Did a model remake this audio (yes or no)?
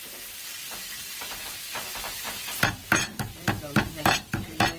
no